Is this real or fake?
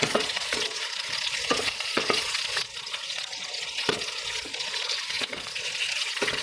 fake